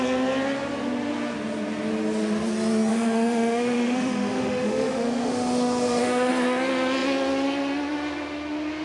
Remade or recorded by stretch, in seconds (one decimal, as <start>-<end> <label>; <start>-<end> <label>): 0.0-2.9 recorded; 2.9-6.3 remade; 6.3-8.8 recorded